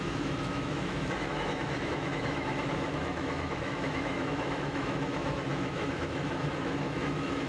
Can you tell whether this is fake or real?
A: fake